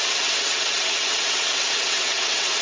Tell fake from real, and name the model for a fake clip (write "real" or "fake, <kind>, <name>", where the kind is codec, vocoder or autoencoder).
fake, vocoder, WaveNeXt